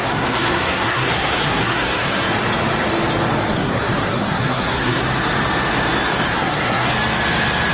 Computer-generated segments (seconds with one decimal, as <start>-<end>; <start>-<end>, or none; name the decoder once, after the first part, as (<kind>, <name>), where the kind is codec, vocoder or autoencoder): 0.0-2.3 (codec, SNAC); 3.5-5.0; 6.3-6.9